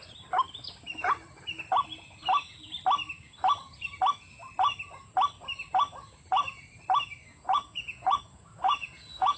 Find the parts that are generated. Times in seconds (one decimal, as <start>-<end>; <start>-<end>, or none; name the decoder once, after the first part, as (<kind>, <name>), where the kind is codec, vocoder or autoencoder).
7.3-9.4 (vocoder, Vocos)